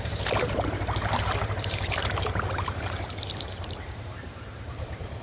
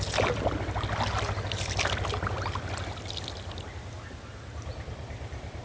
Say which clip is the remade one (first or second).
first